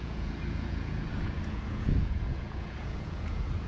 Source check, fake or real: fake